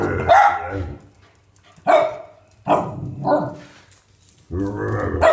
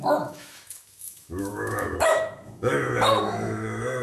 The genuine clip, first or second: first